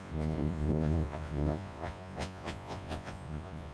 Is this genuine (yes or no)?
no